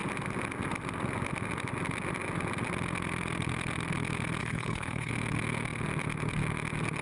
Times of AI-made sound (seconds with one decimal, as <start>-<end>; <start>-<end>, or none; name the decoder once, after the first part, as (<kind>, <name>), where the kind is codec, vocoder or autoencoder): 4.4-5.1 (codec, HILCodec)